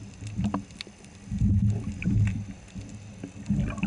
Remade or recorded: recorded